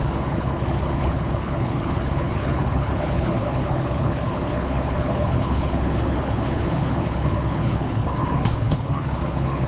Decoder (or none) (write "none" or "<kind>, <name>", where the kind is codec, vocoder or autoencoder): codec, HILCodec